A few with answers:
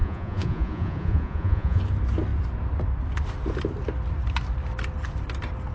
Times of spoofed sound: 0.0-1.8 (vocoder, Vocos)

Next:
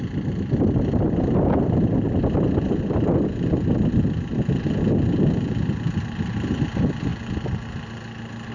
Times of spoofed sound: none

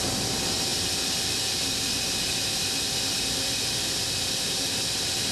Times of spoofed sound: none

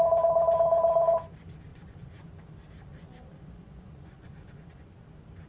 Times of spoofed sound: 1.7-2.3 (vocoder, Vocos); 2.9-4.9

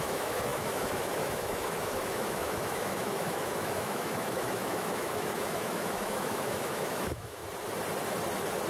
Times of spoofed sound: 0.0-7.4 (autoencoder, DAC-VAE)

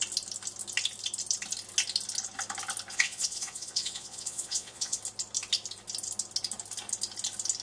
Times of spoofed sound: 2.9-5.0 (vocoder, Vocos)